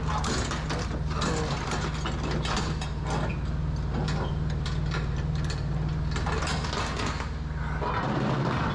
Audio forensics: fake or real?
real